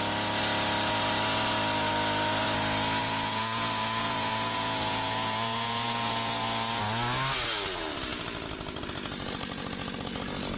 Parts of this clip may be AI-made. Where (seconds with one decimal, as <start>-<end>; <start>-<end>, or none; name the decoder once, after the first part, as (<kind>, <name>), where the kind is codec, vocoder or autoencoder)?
3.0-6.8 (vocoder, Vocos)